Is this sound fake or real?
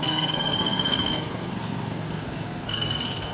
fake